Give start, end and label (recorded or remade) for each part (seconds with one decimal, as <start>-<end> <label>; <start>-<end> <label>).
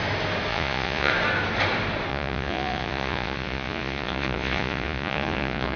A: 0.0-0.5 recorded; 0.5-1.1 remade; 1.1-2.1 recorded; 2.1-5.8 remade